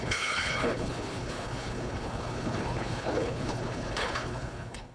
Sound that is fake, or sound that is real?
fake